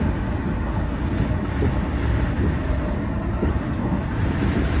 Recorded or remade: recorded